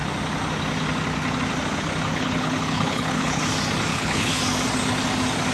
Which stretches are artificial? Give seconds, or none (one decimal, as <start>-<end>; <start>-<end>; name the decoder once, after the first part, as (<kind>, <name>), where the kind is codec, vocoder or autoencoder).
2.1-3.4 (codec, HILCodec); 3.9-4.4